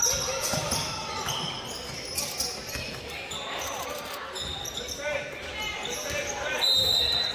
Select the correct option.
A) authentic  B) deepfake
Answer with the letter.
A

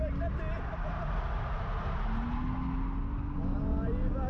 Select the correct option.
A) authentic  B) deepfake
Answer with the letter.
A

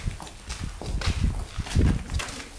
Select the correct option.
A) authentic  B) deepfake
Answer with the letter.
A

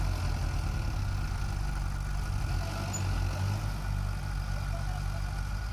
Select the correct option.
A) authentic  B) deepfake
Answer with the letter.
A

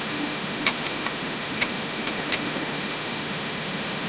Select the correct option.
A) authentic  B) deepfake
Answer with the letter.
B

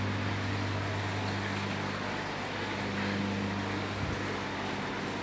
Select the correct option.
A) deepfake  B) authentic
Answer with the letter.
B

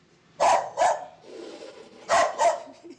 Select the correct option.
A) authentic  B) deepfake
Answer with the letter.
A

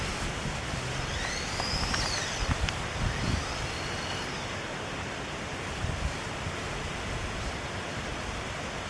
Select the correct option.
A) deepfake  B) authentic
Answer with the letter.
B